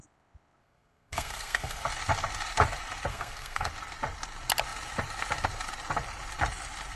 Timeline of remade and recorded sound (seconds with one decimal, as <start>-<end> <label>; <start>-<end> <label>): 0.0-0.6 recorded; 0.6-1.8 remade; 1.8-3.1 recorded; 3.1-3.7 remade; 3.7-7.0 recorded